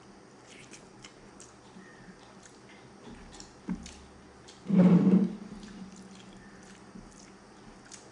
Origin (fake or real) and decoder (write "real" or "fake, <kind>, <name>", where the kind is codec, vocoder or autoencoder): real